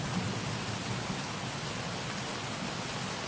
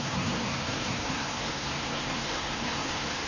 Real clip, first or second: first